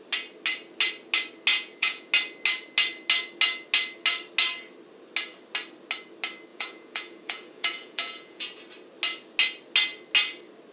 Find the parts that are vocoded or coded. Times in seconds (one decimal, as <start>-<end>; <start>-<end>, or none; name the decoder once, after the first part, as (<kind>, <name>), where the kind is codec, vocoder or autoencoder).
1.5-2.1 (vocoder, Vocos); 6.5-8.6